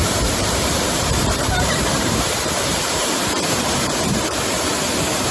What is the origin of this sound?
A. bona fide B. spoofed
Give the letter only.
B